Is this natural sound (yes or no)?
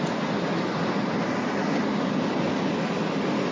yes